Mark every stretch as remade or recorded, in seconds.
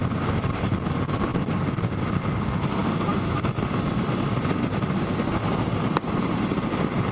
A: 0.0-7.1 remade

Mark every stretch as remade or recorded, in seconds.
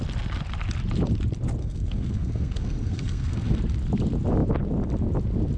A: 0.0-1.6 recorded; 1.6-3.6 remade; 3.6-5.6 recorded